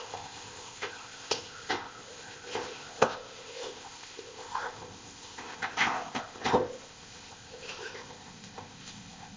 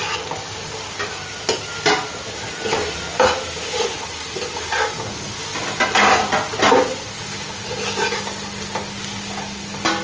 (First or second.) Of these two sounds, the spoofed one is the first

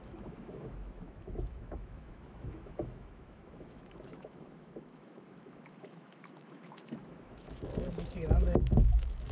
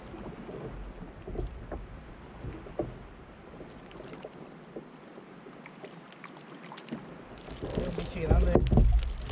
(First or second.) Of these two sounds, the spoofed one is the first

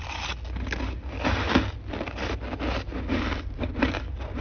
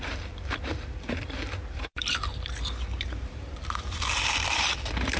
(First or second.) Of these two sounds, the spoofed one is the second